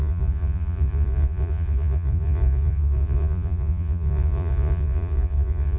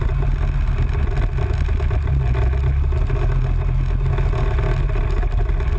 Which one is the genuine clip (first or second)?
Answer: second